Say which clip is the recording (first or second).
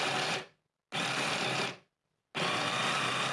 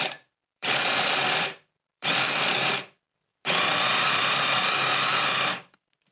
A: first